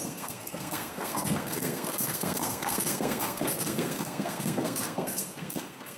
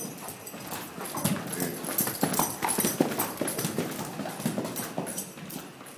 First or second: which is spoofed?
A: first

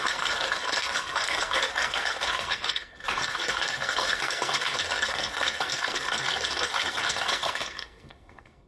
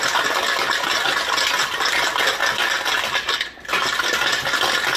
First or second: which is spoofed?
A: first